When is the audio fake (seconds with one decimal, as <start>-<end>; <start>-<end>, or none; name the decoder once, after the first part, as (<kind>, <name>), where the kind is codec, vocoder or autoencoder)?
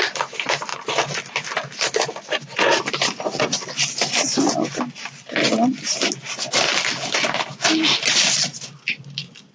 none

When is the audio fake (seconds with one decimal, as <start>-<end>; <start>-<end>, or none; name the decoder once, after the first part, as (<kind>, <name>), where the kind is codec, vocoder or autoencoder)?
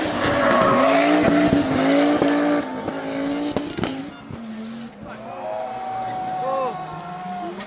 none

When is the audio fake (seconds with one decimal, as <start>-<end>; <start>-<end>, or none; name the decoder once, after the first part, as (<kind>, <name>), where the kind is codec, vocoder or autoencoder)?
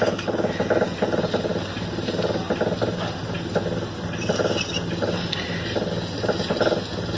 none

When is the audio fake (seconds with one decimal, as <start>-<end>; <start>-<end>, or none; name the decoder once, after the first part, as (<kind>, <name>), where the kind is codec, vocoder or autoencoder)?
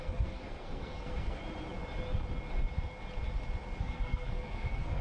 0.0-1.4 (codec, SNAC); 3.8-5.0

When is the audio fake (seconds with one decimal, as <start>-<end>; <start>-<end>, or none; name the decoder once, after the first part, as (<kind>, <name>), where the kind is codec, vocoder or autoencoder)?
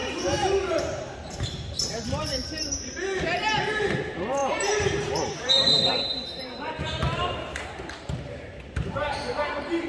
0.0-9.9 (vocoder, BigVGAN v2)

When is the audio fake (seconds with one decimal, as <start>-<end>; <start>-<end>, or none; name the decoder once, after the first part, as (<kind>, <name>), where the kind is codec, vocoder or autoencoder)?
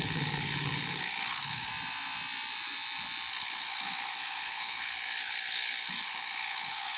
0.0-1.7 (codec, HILCodec); 3.3-7.0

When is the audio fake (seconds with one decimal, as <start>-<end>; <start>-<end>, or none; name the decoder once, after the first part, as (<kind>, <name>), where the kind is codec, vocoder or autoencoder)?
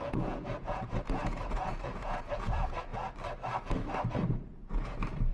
0.0-2.9 (vocoder, Vocos); 4.3-5.3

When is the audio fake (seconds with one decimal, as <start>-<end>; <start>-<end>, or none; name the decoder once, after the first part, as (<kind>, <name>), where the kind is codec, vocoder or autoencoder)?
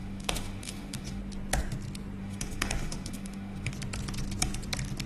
0.0-1.2 (autoencoder, DAC-VAE); 2.2-3.7